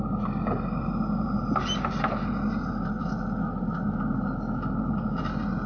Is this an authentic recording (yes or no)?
yes